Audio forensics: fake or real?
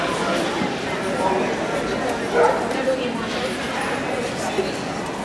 real